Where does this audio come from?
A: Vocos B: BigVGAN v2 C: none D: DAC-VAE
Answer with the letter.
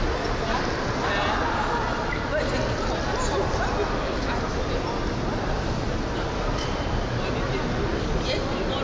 C